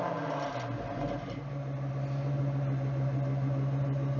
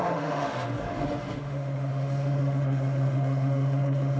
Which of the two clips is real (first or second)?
first